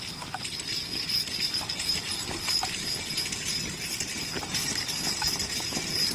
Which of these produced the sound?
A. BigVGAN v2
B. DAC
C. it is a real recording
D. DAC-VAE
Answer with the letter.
C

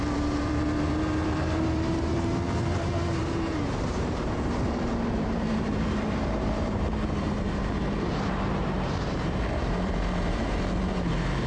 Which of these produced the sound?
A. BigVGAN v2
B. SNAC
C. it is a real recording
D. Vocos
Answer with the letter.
A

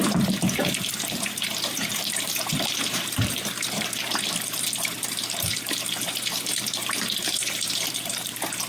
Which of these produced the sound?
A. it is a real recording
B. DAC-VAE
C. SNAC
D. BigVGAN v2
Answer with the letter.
D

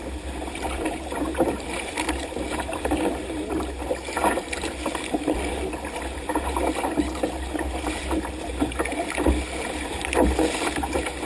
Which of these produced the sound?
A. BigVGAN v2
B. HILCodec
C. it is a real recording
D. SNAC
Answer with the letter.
C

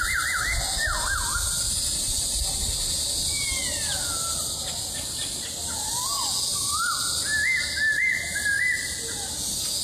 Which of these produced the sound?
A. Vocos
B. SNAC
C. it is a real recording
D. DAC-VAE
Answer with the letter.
C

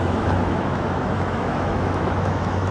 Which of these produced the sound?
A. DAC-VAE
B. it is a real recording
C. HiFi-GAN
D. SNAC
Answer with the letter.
A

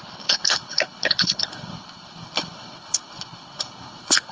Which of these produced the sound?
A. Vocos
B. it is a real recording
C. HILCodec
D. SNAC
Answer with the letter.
C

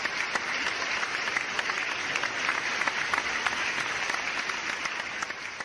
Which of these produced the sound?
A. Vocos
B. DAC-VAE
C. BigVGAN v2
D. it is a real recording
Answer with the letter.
D